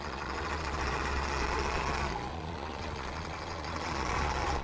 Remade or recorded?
remade